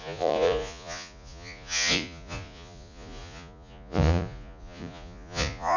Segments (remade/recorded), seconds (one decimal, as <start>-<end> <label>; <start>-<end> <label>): 0.0-5.8 remade